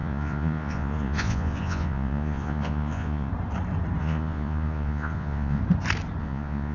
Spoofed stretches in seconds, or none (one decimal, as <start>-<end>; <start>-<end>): 0.0-3.3; 4.0-5.6; 6.2-6.7